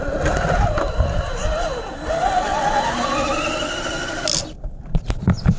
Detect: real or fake real